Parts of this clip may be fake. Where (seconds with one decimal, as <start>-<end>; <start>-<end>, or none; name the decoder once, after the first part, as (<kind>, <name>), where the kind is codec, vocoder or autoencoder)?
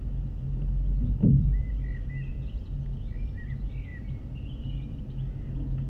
none